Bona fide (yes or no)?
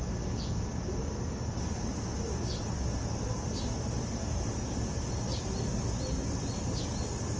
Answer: yes